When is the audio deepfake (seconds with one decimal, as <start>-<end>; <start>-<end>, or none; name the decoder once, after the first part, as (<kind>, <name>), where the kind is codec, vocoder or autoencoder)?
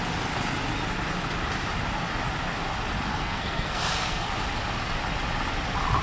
3.1-4.3 (codec, SNAC)